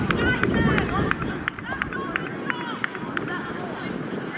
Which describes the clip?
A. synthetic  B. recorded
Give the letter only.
B